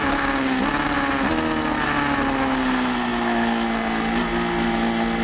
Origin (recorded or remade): recorded